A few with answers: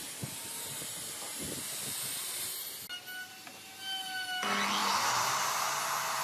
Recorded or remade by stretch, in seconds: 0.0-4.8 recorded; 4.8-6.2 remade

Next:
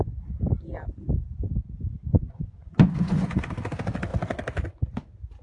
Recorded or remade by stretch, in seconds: 0.0-2.1 recorded; 2.1-3.4 remade; 3.4-5.4 recorded

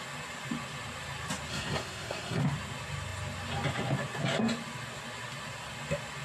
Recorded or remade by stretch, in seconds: 0.0-1.5 recorded; 1.5-2.4 remade; 2.4-6.2 recorded

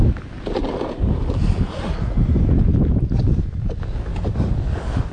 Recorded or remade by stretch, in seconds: 0.0-4.1 recorded; 4.1-5.1 remade

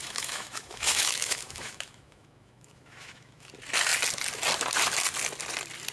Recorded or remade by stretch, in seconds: 0.0-3.5 remade; 3.5-5.9 recorded

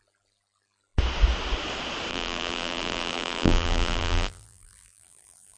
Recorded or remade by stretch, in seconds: 0.0-2.1 recorded; 2.1-5.6 remade